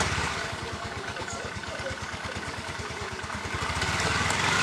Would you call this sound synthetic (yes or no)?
yes